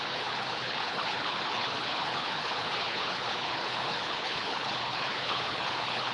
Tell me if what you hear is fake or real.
fake